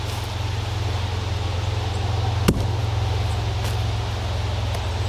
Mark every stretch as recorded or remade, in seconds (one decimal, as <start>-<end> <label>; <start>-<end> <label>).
0.0-5.1 recorded